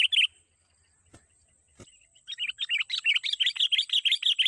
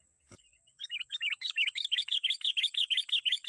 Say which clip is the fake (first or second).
second